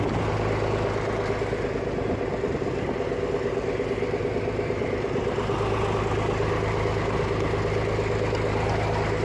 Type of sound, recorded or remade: recorded